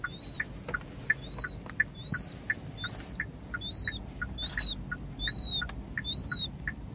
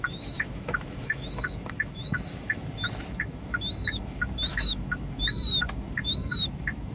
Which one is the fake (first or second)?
second